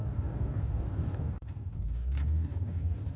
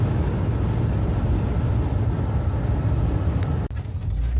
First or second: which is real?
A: second